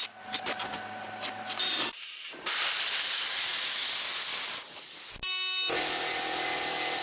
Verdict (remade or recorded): recorded